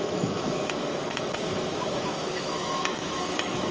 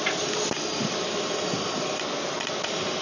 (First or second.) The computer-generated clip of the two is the first